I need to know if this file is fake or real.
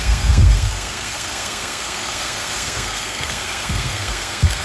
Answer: fake